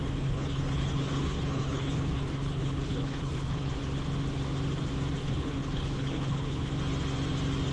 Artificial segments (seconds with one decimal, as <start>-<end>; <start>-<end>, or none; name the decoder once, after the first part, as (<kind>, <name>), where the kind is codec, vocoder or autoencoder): 0.0-3.8 (codec, HILCodec); 5.2-6.7